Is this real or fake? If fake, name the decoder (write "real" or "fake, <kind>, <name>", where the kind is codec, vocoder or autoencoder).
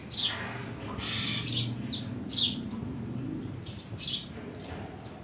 real